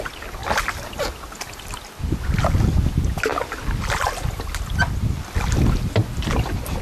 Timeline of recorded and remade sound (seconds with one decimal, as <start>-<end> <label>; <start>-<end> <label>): 0.0-6.8 recorded